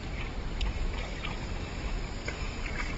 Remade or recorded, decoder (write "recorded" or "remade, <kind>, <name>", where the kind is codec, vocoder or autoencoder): recorded